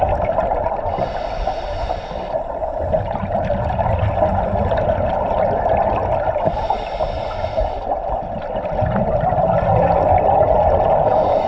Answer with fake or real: real